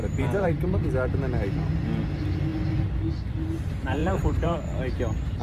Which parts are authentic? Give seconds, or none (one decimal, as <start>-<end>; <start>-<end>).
0.9-4.0; 4.7-5.4